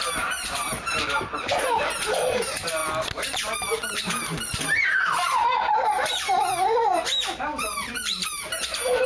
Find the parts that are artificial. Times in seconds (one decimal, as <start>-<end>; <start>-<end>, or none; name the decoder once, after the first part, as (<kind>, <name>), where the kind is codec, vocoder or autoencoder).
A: 0.0-2.8 (vocoder, BigVGAN v2); 4.6-9.1

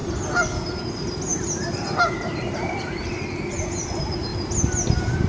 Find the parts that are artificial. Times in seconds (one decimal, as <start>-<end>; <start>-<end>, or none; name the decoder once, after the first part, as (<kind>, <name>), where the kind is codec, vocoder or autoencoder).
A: 0.0-0.8 (vocoder, BigVGAN v2); 1.3-3.1